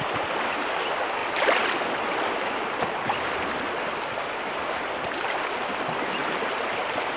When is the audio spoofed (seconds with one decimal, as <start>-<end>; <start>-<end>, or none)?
none